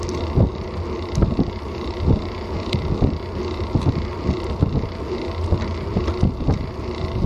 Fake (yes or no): no